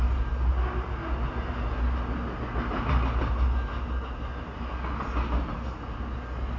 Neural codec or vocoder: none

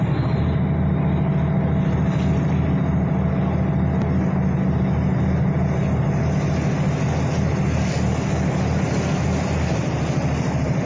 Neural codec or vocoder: none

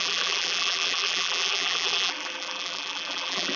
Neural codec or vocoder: vocoder, BigVGAN v2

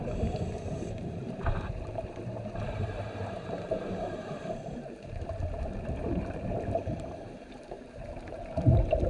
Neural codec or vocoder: vocoder, BigVGAN v2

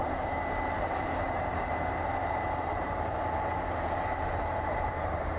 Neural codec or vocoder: vocoder, BigVGAN v2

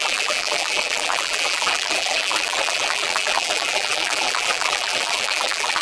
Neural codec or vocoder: vocoder, BigVGAN v2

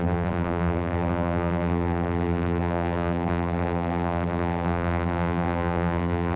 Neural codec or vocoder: vocoder, BigVGAN v2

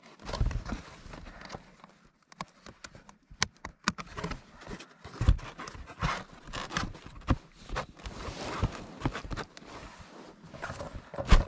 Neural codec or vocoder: none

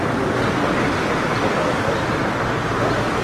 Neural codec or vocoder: none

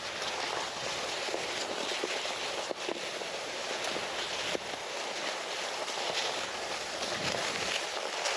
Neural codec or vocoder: none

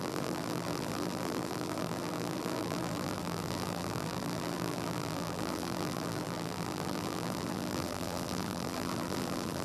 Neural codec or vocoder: vocoder, BigVGAN v2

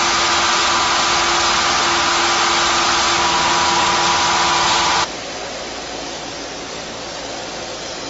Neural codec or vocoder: none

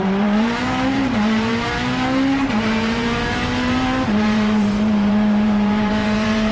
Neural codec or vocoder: vocoder, BigVGAN v2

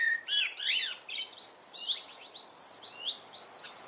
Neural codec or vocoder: vocoder, BigVGAN v2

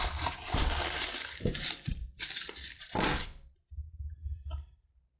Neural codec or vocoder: vocoder, BigVGAN v2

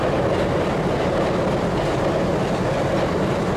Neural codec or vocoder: none